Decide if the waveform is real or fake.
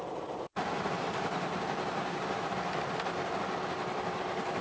real